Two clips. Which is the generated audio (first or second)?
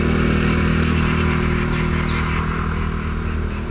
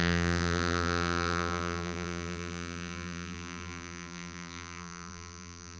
second